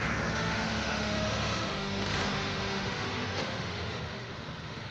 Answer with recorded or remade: remade